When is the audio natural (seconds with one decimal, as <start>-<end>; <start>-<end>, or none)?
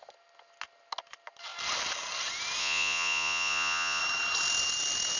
0.0-2.6; 4.0-5.2